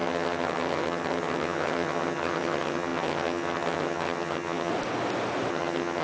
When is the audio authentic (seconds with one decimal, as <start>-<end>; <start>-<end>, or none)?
4.7-5.5